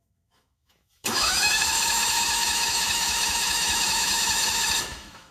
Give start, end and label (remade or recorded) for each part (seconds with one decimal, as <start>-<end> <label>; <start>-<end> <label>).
0.0-5.3 remade

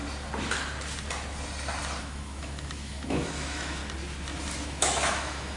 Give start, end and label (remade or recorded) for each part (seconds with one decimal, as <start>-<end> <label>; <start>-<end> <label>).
0.0-2.0 recorded; 2.0-3.8 remade; 3.8-4.6 recorded; 4.6-5.6 remade

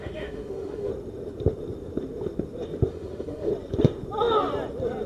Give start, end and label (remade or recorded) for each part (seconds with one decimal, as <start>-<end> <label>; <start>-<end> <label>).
0.0-0.9 remade; 0.9-2.9 recorded; 2.9-3.5 remade; 3.5-5.1 recorded

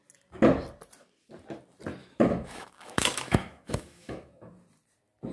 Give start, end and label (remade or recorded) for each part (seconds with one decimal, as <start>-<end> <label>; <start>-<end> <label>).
0.0-2.0 recorded; 2.0-4.5 remade; 4.5-5.3 recorded

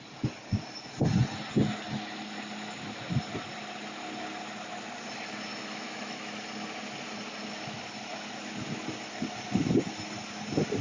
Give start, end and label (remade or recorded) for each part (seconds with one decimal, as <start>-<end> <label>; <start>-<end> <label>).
0.0-5.5 recorded; 5.5-6.4 remade; 6.4-10.8 recorded

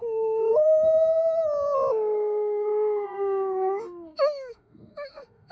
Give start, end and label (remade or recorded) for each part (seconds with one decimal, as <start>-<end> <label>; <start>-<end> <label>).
0.0-0.5 remade; 0.5-1.9 recorded; 1.9-5.5 remade